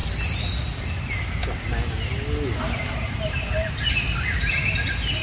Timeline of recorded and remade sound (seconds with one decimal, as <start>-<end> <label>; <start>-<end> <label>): 0.0-5.2 recorded